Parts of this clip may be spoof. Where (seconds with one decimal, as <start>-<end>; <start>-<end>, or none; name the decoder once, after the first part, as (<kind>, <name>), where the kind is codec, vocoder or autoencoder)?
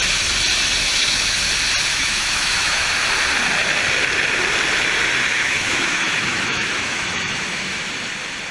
0.8-1.5 (autoencoder, DAC-VAE); 1.9-2.9; 5.3-7.9